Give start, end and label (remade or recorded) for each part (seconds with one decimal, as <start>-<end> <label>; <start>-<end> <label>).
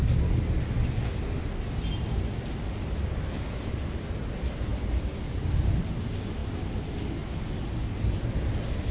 0.0-8.9 recorded